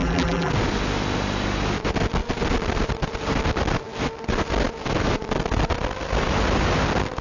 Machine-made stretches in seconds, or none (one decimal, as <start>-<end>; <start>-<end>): 0.0-0.5